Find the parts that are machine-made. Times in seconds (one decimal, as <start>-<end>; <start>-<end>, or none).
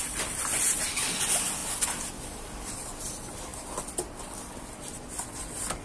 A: 0.0-1.6; 2.7-3.5; 4.7-5.8